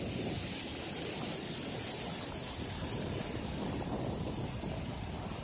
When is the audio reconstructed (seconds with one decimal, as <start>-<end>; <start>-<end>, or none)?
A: none